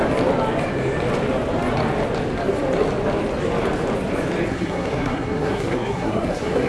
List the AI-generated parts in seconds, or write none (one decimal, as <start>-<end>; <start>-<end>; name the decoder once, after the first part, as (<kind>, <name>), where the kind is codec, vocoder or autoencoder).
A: 4.5-6.7 (codec, SNAC)